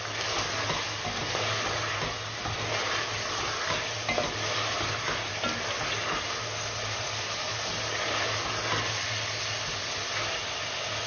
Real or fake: real